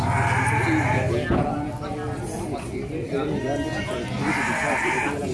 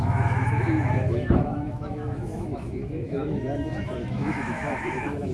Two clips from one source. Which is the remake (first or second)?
second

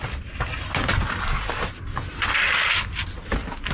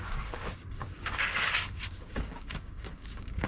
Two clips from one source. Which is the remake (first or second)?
second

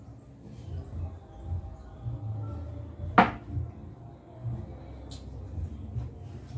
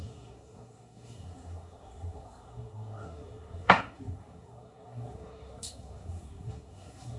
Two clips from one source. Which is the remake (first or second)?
second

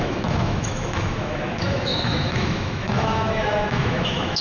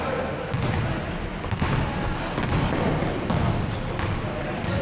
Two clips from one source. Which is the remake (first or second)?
first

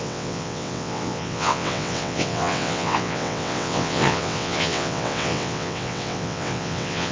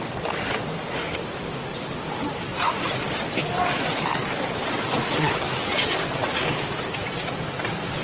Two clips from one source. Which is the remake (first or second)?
first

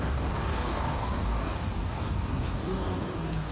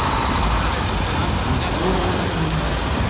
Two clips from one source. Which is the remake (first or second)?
first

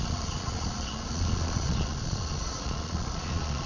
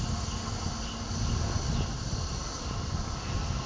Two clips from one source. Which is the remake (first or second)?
first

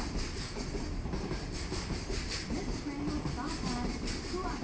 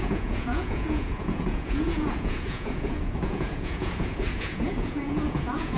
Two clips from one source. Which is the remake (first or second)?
second